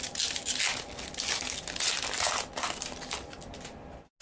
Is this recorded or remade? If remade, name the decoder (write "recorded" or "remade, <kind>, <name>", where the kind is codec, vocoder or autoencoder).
recorded